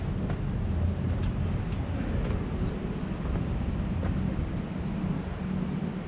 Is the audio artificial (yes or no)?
no